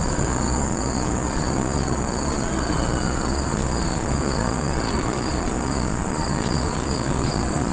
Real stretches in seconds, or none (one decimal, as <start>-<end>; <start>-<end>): none